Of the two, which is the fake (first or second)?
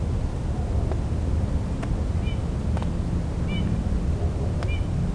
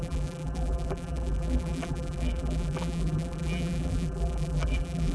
second